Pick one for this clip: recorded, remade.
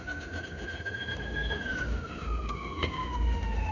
remade